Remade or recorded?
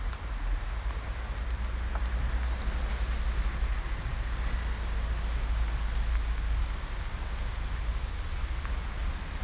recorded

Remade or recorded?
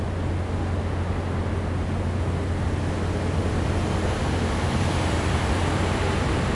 recorded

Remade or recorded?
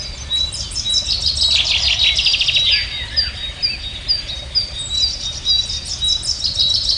recorded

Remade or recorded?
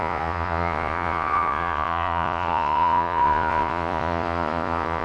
remade